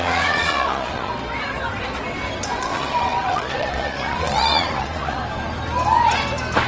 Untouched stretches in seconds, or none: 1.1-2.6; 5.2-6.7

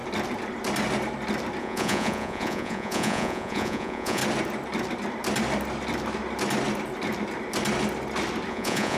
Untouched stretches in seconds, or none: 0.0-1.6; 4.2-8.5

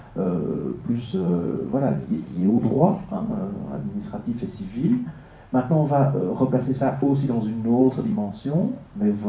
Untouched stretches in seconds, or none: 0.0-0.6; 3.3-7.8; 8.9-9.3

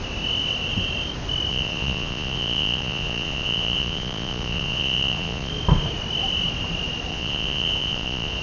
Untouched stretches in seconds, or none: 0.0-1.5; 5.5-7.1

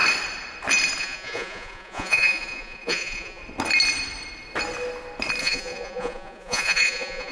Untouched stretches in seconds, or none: 0.0-1.0; 3.4-5.4